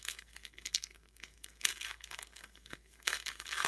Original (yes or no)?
no